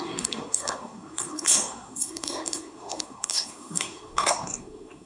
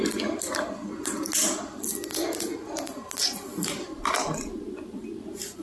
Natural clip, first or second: second